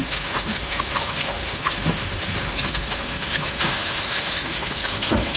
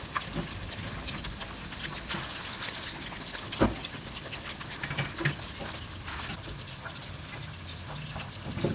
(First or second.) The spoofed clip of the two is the first